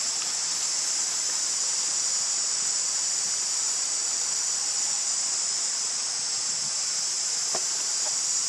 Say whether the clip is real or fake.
real